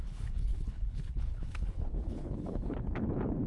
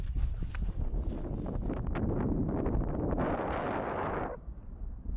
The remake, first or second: first